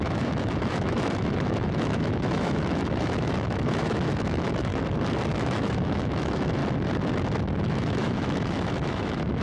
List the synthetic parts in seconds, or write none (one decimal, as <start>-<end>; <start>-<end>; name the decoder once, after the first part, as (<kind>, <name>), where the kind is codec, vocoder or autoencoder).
0.0-4.7 (autoencoder, DAC-VAE); 5.3-6.6; 7.6-9.4